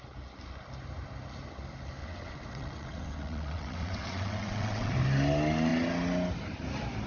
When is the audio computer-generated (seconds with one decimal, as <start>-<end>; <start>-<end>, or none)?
2.0-4.9

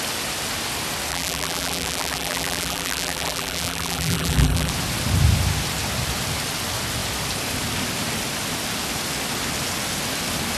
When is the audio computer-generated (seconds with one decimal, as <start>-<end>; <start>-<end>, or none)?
1.1-4.7

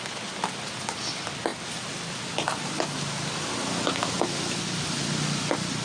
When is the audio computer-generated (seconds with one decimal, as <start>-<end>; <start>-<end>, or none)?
none

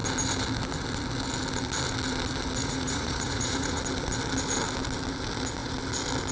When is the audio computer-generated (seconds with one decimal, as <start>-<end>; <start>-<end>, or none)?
2.6-3.8

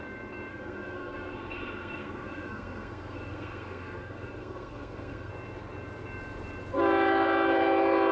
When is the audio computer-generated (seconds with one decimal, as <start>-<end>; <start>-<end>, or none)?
0.5-5.3

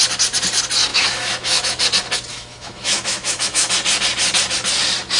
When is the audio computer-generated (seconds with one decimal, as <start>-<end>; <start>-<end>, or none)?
0.9-1.8; 2.3-3.7

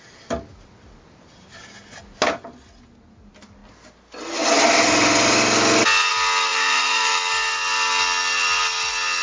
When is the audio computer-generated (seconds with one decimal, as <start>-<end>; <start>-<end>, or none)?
6.5-7.1